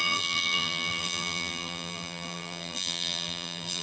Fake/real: fake